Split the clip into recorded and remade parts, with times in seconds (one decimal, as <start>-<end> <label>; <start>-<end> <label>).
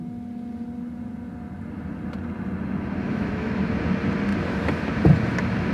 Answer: 0.0-3.0 recorded; 3.0-3.6 remade; 3.6-5.7 recorded